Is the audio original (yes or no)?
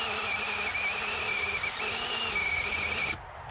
yes